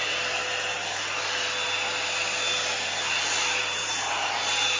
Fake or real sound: real